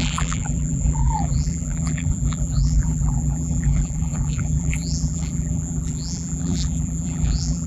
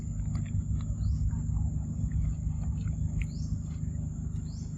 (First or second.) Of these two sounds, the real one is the second